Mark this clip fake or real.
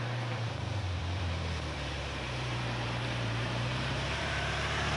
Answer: fake